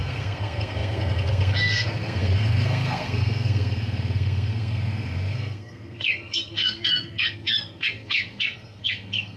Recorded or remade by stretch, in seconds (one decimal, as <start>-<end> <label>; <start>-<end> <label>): 0.0-9.4 remade